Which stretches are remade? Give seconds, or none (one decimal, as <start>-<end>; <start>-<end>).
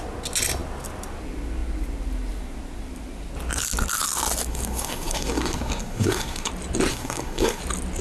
4.5-6.5; 6.9-7.6